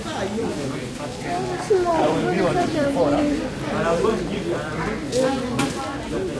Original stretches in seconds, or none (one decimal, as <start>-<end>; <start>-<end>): 0.5-1.9; 4.9-6.4